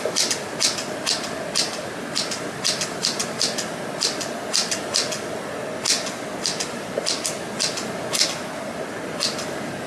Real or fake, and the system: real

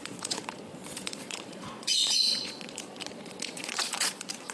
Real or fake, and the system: fake, vocoder, Vocos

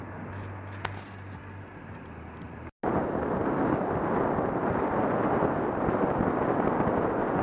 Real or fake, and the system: real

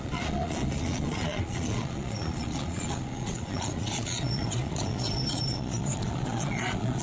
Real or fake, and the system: fake, vocoder, Vocos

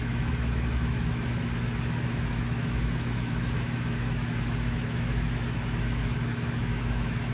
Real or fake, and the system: fake, autoencoder, DAC-VAE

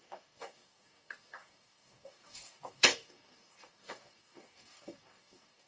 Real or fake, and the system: fake, codec, DAC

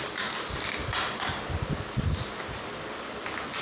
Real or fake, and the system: real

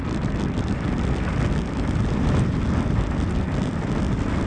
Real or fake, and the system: real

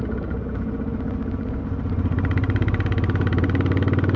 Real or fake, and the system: real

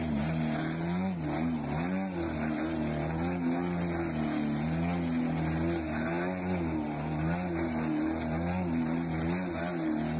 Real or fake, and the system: real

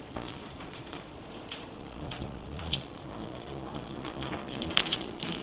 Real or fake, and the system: fake, vocoder, Vocos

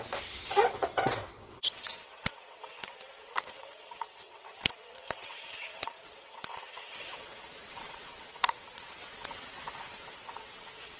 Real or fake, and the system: fake, vocoder, WaveNeXt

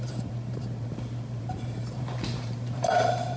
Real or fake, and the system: fake, vocoder, BigVGAN v2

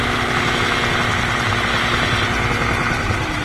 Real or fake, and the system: real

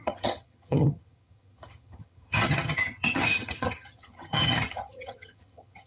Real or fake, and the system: fake, vocoder, HiFi-GAN